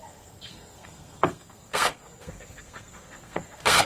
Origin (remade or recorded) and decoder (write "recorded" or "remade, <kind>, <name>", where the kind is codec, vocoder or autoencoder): remade, codec, SNAC